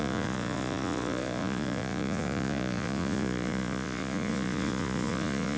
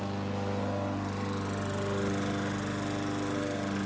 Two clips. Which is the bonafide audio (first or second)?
second